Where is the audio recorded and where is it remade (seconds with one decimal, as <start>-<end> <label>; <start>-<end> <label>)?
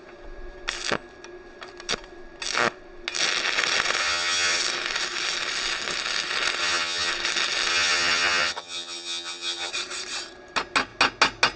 0.0-4.0 recorded; 4.0-4.6 remade; 4.6-6.6 recorded; 6.6-7.1 remade; 7.1-7.7 recorded; 7.7-9.7 remade; 9.7-11.6 recorded